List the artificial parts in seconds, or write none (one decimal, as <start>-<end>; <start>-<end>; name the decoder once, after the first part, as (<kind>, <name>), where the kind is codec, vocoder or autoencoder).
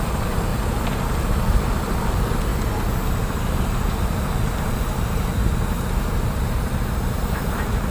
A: 0.0-0.5 (vocoder, BigVGAN v2); 1.0-2.5; 3.1-7.9